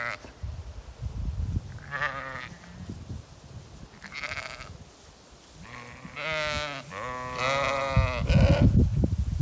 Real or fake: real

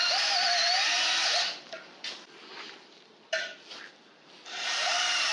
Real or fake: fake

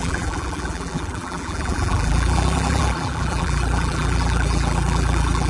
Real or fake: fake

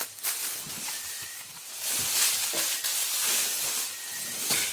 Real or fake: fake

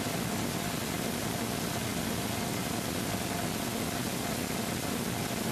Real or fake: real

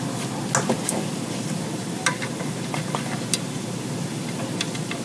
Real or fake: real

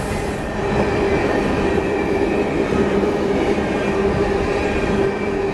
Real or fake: real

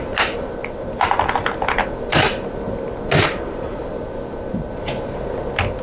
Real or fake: real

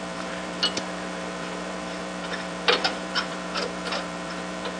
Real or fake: fake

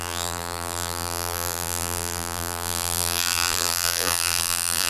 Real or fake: fake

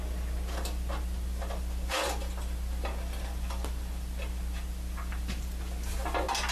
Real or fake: real